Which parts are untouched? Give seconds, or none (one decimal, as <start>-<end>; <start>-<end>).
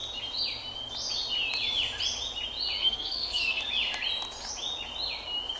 0.0-2.8; 3.6-5.6